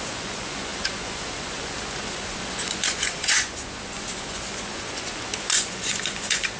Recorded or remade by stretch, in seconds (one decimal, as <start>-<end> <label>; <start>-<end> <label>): 0.0-6.6 remade